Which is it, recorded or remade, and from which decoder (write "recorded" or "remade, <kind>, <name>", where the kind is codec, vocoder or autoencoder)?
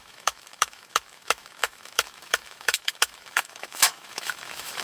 remade, autoencoder, DAC-VAE